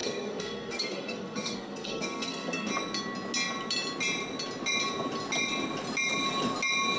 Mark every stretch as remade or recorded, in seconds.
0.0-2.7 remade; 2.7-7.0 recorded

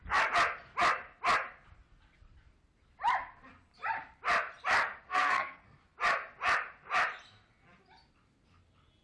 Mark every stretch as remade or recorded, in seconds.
0.0-5.0 recorded; 5.0-5.8 remade; 5.8-9.0 recorded

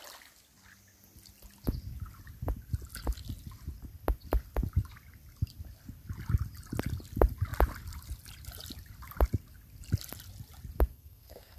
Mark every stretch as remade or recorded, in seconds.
0.0-10.9 recorded; 10.9-11.6 remade

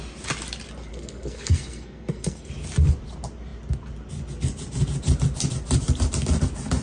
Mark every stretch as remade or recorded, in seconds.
0.0-0.9 recorded; 0.9-2.5 remade; 2.5-6.8 recorded